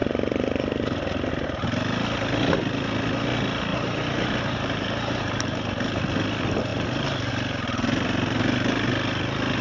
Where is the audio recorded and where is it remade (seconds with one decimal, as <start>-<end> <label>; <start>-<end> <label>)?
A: 0.0-3.7 recorded; 3.7-5.6 remade; 5.6-9.6 recorded